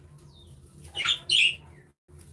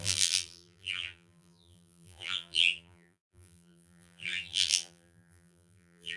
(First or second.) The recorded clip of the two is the first